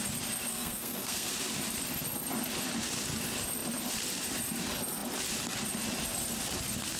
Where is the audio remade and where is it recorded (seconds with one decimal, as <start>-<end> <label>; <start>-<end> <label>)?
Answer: 0.0-0.5 recorded; 0.5-1.3 remade; 1.3-7.0 recorded

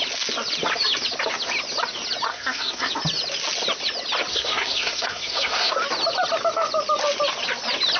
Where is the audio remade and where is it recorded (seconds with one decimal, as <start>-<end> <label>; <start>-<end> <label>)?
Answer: 0.0-2.3 recorded; 2.3-2.9 remade; 2.9-4.3 recorded; 4.3-5.7 remade; 5.7-8.0 recorded

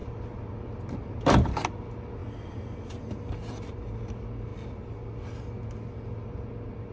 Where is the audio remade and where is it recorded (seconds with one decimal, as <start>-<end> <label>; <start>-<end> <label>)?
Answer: 0.0-6.9 recorded

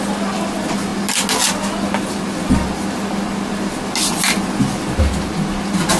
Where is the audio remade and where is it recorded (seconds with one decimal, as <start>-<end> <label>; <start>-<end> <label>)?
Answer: 0.0-6.0 recorded